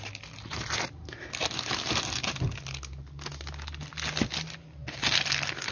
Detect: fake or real real